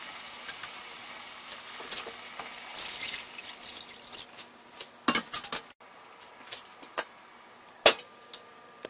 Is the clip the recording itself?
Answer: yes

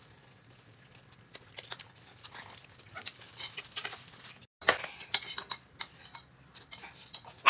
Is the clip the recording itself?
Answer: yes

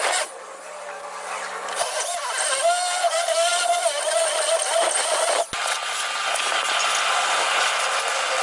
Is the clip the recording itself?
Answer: yes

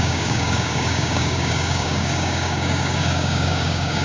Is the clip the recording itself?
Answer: no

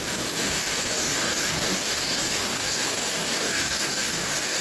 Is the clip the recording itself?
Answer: no